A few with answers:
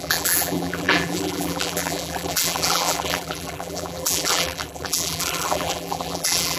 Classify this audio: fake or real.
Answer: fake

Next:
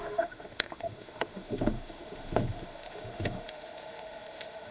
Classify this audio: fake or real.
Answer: fake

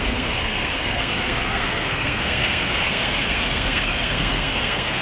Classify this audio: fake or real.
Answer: fake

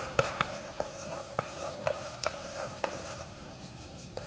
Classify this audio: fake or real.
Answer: fake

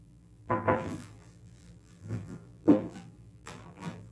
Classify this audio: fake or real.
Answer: fake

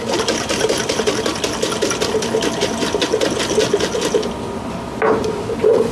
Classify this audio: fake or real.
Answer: real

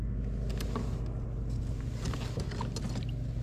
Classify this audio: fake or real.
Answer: real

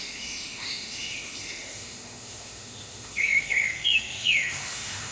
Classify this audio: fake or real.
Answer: fake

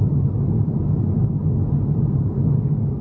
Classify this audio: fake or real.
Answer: real